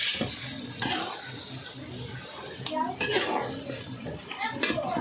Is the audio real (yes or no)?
yes